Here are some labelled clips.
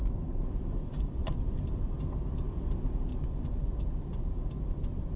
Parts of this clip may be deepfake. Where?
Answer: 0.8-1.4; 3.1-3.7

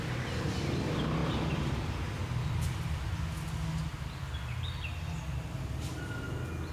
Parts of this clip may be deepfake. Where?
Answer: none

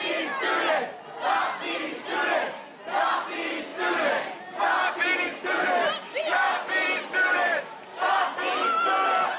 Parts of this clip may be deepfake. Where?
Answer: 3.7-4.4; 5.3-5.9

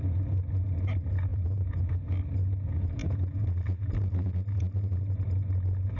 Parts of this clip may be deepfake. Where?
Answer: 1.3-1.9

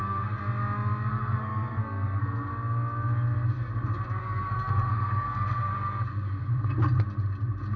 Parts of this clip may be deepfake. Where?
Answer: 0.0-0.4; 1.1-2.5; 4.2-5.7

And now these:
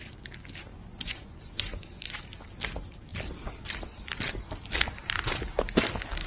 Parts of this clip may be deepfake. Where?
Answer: 0.7-2.2